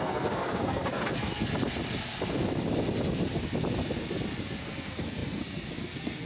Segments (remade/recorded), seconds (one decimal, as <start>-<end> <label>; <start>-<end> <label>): 0.0-1.5 remade; 1.5-4.6 recorded; 4.6-6.3 remade